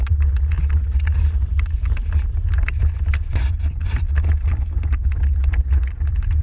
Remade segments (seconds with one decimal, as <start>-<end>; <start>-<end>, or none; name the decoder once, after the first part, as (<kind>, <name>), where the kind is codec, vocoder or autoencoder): none